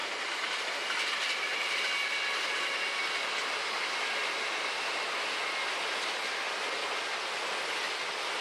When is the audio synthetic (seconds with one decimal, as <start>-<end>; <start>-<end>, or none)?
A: 0.0-0.6